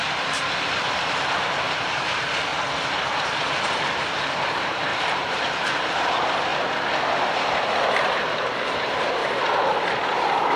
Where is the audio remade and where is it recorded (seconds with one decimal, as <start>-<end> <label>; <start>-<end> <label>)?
0.0-2.5 remade; 2.5-4.4 recorded; 4.4-6.5 remade; 6.5-7.1 recorded; 7.1-9.2 remade; 9.2-10.6 recorded